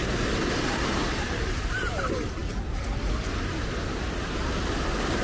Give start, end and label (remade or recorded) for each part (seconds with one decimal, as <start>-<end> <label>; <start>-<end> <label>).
0.0-0.9 recorded; 0.9-1.8 remade; 1.8-5.2 recorded